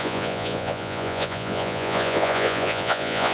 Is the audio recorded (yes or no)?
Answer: no